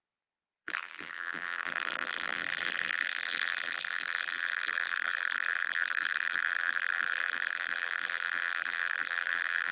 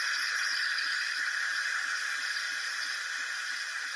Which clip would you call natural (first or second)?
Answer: second